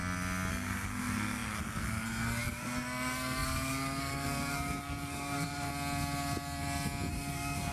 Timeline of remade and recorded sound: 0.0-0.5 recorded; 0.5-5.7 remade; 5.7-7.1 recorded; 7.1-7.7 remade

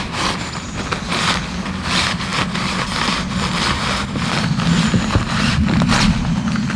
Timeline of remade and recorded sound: 0.0-6.8 recorded

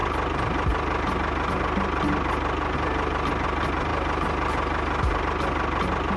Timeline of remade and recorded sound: 0.0-6.2 recorded

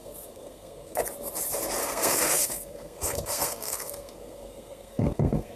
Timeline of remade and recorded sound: 0.0-1.0 remade; 1.0-1.8 recorded; 1.8-5.6 remade